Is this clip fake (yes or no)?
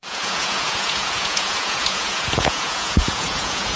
yes